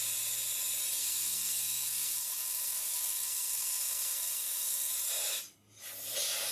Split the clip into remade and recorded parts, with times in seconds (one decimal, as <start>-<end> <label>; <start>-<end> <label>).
0.0-1.0 recorded; 1.0-4.9 remade; 4.9-6.5 recorded